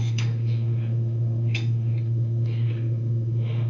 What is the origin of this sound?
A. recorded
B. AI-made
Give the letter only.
B